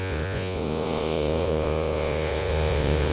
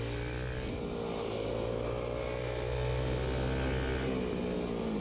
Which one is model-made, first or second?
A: first